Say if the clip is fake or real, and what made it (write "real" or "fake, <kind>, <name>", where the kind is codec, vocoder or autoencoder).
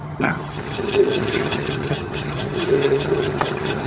fake, vocoder, HiFi-GAN